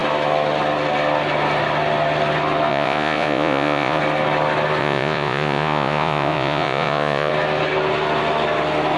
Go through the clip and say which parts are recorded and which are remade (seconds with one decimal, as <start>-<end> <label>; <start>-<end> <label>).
0.0-2.7 recorded; 2.7-4.0 remade; 4.0-4.8 recorded; 4.8-7.3 remade; 7.3-9.0 recorded